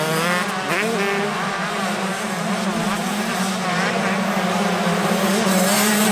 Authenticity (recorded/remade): recorded